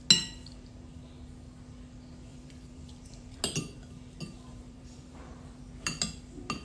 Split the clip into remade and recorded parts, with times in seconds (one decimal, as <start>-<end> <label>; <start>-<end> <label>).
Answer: 0.0-2.3 recorded; 2.3-3.4 remade; 3.4-4.5 recorded; 4.5-5.6 remade; 5.6-6.6 recorded